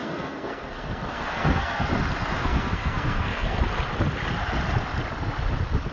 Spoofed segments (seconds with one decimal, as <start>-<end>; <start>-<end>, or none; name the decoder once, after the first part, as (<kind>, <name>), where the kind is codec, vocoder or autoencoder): 0.0-1.9 (codec, SNAC); 2.4-3.6